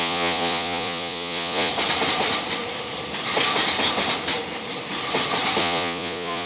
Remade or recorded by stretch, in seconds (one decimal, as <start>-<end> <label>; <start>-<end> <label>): 0.0-1.7 remade; 1.7-5.6 recorded; 5.6-6.5 remade